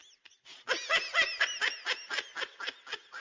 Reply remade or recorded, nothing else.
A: recorded